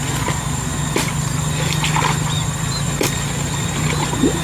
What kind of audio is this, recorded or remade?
recorded